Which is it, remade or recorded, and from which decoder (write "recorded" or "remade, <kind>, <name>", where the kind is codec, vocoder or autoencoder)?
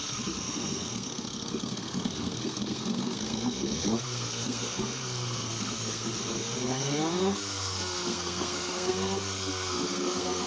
remade, codec, SNAC